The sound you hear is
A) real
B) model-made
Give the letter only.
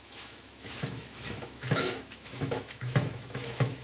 B